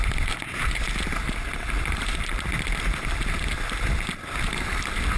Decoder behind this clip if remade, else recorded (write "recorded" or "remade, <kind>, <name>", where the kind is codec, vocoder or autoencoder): recorded